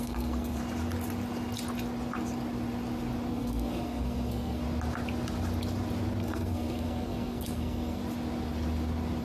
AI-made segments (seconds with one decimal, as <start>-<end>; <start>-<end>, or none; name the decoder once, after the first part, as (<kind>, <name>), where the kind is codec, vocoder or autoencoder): 0.0-0.6 (codec, SNAC); 3.3-4.6; 6.2-8.0